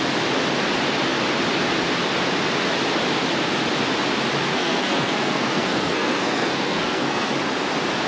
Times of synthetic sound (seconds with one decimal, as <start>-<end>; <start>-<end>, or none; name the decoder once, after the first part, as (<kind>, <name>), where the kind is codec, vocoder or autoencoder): 4.5-7.3 (codec, SNAC)